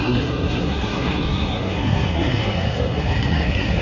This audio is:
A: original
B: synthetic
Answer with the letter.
B